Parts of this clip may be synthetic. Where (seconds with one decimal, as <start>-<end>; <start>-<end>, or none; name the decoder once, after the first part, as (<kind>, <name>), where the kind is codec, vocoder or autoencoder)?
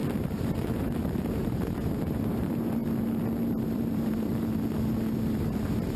0.0-2.8 (vocoder, BigVGAN v2); 3.4-4.3; 5.1-6.0